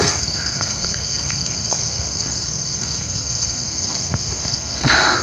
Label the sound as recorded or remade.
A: remade